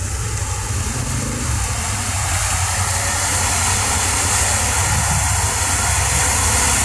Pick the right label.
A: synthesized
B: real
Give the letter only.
B